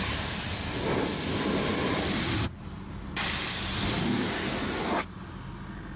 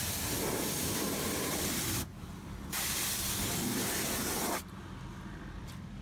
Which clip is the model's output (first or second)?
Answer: second